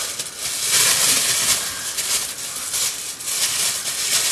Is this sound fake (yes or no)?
no